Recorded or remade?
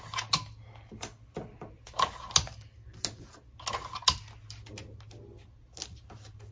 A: recorded